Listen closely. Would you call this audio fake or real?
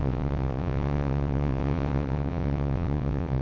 fake